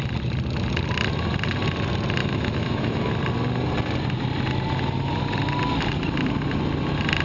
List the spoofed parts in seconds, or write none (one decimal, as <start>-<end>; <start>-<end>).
2.2-3.1